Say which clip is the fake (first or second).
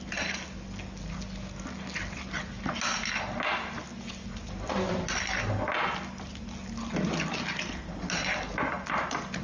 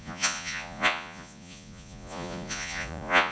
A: second